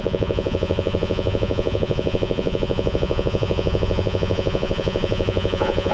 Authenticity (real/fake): fake